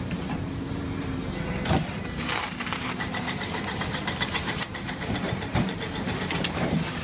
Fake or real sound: fake